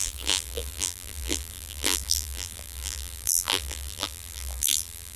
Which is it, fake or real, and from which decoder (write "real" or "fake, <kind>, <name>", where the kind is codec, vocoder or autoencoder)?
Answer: fake, vocoder, BigVGAN v2